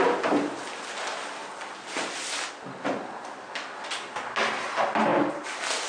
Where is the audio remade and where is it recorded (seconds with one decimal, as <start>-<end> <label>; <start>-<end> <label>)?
0.0-5.1 recorded; 5.1-5.9 remade